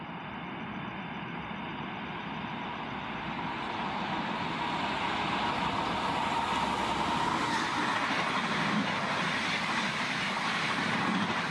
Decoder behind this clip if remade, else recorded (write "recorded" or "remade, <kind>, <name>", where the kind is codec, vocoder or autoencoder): recorded